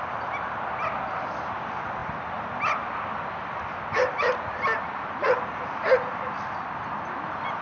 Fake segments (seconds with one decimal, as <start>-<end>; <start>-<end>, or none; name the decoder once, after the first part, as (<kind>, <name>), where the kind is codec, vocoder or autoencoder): none